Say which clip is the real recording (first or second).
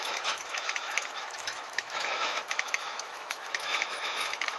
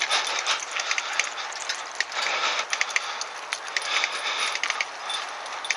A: second